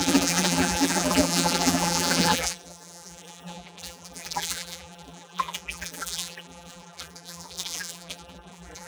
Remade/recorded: remade